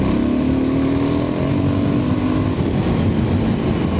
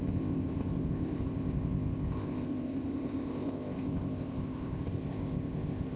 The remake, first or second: second